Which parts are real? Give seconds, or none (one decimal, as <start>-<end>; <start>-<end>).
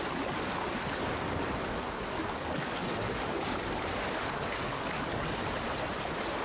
0.0-1.6; 5.4-6.4